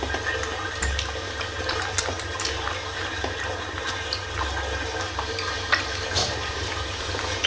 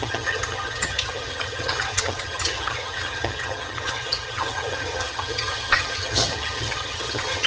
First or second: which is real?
first